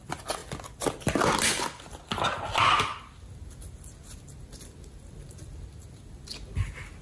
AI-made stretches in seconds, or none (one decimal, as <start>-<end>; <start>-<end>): none

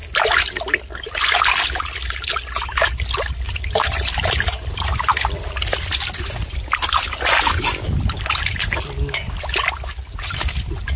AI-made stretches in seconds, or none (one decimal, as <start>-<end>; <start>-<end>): none

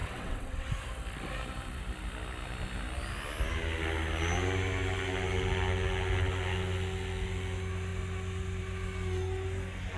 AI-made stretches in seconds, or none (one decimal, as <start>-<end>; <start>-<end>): 0.0-0.7

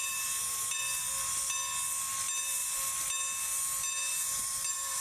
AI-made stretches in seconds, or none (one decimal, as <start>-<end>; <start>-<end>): 0.0-0.7; 4.1-5.0

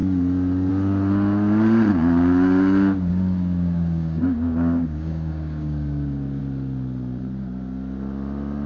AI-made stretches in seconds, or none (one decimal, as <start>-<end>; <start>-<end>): 1.9-6.4

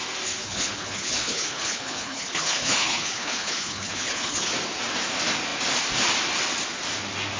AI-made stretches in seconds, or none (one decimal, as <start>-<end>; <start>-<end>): 0.4-4.5

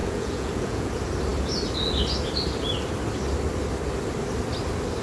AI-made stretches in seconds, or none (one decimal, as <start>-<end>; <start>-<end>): 0.0-0.9

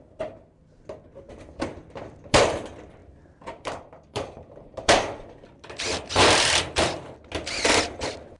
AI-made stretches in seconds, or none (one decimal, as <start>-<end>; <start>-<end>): 1.7-2.5; 3.0-7.0